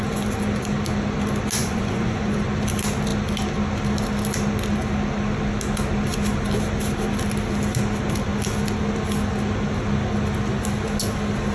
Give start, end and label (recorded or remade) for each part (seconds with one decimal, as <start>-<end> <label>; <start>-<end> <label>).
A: 0.0-1.6 recorded; 1.6-2.4 remade; 2.4-11.5 recorded